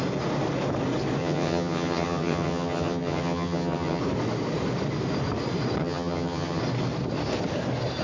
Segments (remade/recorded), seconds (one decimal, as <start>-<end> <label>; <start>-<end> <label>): 0.0-1.2 recorded; 1.2-4.0 remade; 4.0-5.8 recorded; 5.8-6.6 remade; 6.6-8.0 recorded